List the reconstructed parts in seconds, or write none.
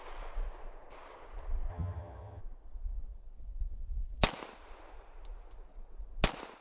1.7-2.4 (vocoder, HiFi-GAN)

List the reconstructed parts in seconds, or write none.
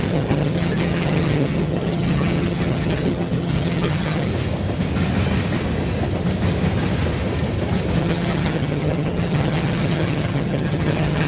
0.0-4.3 (vocoder, HiFi-GAN); 8.0-11.3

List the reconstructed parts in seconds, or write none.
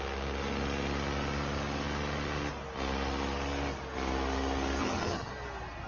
4.8-5.3 (vocoder, HiFi-GAN)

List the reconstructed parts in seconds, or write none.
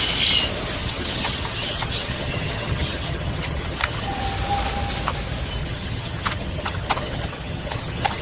0.8-4.2 (vocoder, HiFi-GAN); 5.6-8.2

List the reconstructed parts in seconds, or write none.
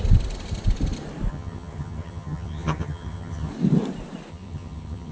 1.3-3.5 (vocoder, HiFi-GAN); 4.3-5.1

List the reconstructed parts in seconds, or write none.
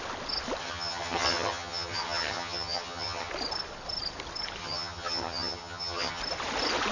0.6-3.3 (vocoder, HiFi-GAN); 4.6-6.2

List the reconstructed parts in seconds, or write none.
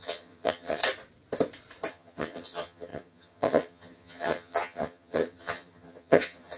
0.0-0.8 (vocoder, HiFi-GAN); 1.9-6.6